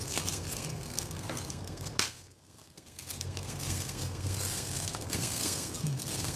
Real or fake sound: fake